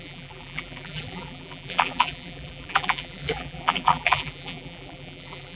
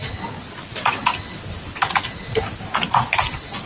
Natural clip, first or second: second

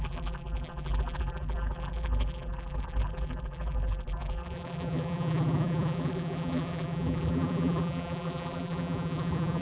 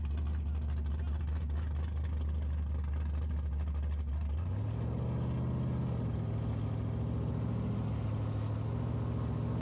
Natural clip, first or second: second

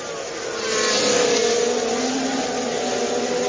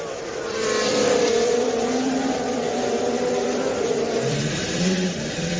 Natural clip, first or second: first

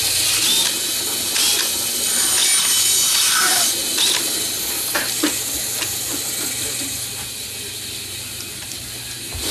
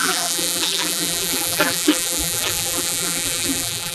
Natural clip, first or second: first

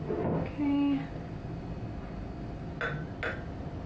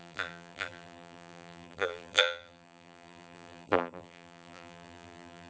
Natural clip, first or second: first